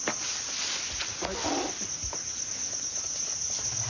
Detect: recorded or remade recorded